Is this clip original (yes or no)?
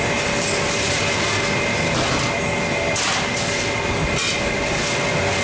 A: yes